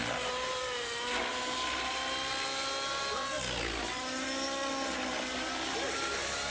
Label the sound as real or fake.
real